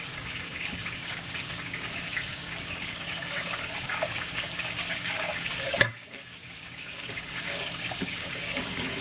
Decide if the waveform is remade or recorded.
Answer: remade